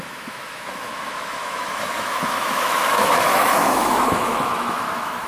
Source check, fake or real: fake